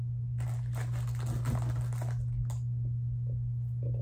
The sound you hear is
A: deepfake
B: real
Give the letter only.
B